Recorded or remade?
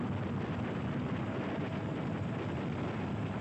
recorded